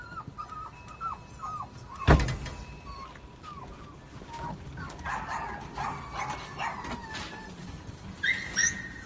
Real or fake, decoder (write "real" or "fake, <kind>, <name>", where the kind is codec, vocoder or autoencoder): real